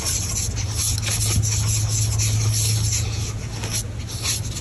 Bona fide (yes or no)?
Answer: yes